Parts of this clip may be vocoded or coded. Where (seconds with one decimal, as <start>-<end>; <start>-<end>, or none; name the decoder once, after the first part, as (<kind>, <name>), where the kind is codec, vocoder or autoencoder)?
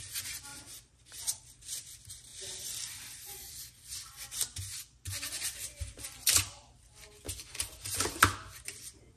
0.5-1.4 (vocoder, BigVGAN v2); 7.5-8.2